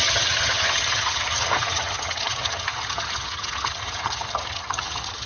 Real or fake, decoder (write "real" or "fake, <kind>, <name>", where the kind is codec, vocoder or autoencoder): fake, vocoder, HiFi-GAN